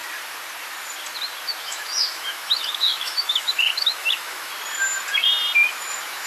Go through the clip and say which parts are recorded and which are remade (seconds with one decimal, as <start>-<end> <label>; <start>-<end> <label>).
0.0-1.6 recorded; 1.6-4.5 remade; 4.5-5.7 recorded; 5.7-6.3 remade